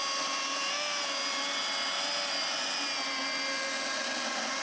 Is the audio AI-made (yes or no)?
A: no